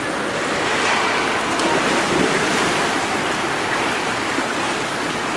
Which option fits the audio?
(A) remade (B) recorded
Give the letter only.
B